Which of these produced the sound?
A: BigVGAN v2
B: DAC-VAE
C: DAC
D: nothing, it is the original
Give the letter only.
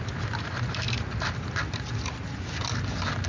A